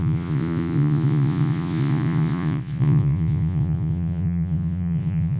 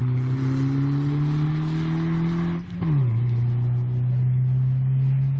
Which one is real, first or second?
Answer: second